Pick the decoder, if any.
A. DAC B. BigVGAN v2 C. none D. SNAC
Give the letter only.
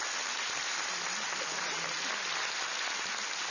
C